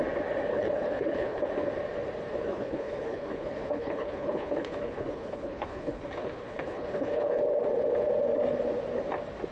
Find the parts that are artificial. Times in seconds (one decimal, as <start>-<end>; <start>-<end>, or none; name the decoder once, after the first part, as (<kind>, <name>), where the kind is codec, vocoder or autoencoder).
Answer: 0.5-1.4 (codec, HILCodec); 2.4-7.4